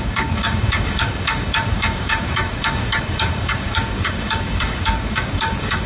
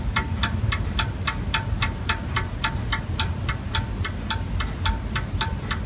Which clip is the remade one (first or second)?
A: first